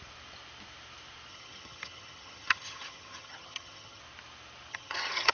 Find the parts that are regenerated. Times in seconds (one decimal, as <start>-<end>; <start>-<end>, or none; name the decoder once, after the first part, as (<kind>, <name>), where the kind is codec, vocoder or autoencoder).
1.3-4.0 (vocoder, HiFi-GAN); 4.7-5.3